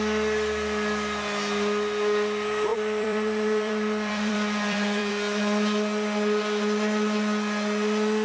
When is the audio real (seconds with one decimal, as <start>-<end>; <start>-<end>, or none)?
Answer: 0.0-2.7; 5.1-8.2